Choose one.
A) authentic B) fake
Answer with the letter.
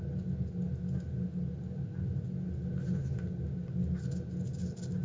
A